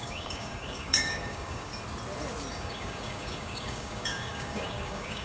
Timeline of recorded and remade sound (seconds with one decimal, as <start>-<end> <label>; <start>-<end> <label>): 0.0-1.7 remade; 1.7-2.5 recorded; 2.5-5.2 remade